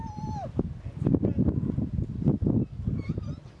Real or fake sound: real